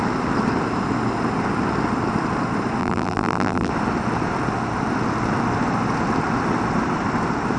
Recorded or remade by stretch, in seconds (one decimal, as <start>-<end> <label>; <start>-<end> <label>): 0.0-2.8 recorded; 2.8-3.7 remade; 3.7-7.6 recorded